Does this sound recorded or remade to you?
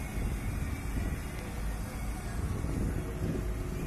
recorded